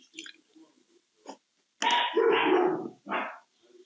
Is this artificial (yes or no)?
no